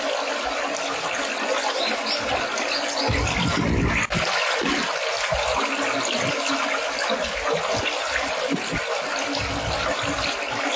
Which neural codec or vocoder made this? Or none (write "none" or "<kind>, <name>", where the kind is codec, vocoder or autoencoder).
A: none